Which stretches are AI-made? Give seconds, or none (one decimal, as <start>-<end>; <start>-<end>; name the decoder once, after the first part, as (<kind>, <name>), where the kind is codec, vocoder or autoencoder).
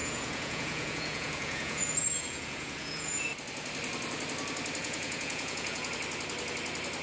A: 0.0-3.3 (vocoder, Vocos); 4.8-5.9